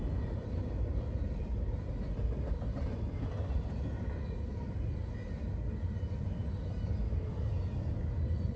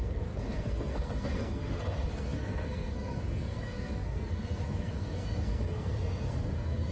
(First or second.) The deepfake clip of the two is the second